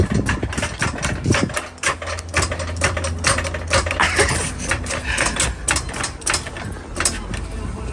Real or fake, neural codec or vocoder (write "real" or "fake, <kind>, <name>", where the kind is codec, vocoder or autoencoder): real